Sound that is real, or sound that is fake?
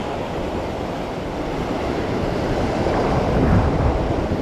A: real